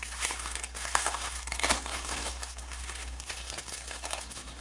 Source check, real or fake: fake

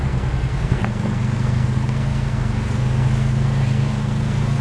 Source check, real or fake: fake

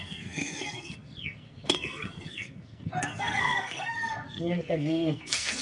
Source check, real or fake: fake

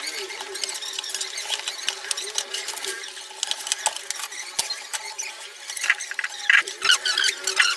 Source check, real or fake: real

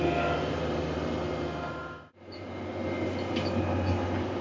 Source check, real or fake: real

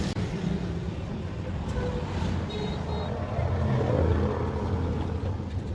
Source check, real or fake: real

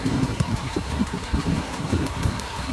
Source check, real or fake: fake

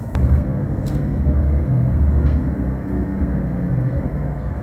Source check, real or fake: fake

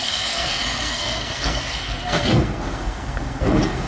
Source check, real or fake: fake